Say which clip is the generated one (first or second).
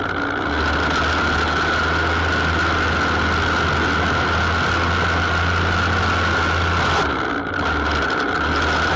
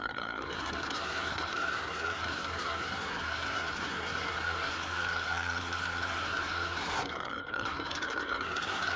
second